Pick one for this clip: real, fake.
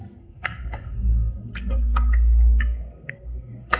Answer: fake